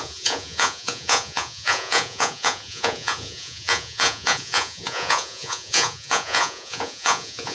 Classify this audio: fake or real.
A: fake